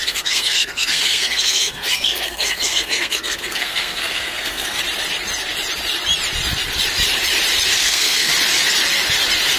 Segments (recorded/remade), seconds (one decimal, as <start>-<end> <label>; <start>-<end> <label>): 0.0-4.8 remade; 4.8-7.8 recorded; 7.8-8.3 remade; 8.3-9.6 recorded